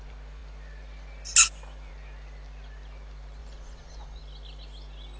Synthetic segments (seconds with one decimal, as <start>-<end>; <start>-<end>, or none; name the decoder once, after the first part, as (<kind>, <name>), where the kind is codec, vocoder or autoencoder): 3.4-4.2 (vocoder, Vocos)